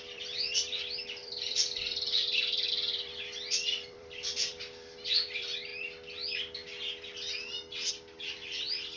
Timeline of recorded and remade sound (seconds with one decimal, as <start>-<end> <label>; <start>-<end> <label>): 0.0-5.7 remade; 5.7-7.9 recorded; 7.9-9.0 remade